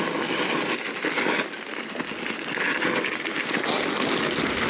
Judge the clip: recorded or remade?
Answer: recorded